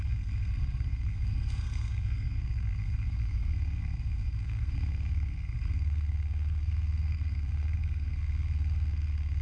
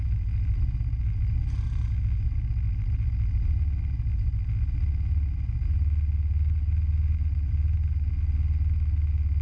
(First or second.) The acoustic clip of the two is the second